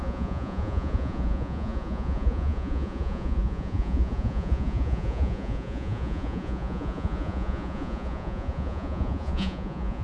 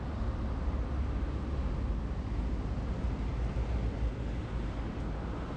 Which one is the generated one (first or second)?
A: first